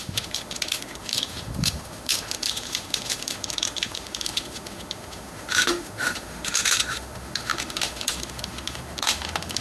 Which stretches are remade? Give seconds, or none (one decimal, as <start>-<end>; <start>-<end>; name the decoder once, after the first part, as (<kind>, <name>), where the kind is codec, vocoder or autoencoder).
0.0-9.6 (autoencoder, DAC-VAE)